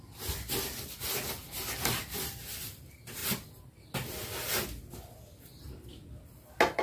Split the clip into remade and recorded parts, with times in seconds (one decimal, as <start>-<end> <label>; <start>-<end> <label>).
0.0-6.8 recorded

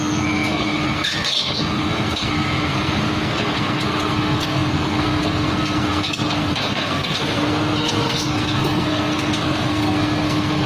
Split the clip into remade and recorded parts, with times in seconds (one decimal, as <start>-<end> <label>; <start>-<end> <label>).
0.0-10.7 remade

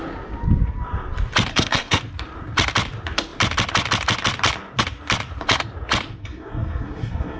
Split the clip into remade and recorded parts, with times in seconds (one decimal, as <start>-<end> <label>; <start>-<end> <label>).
0.0-1.5 recorded; 1.5-2.0 remade; 2.0-6.2 recorded; 6.2-7.4 remade